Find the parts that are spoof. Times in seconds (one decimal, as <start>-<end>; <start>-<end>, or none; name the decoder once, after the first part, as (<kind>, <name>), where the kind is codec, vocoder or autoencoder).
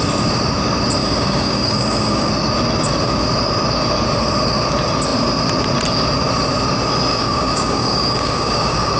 1.0-2.3 (codec, DAC); 7.1-9.0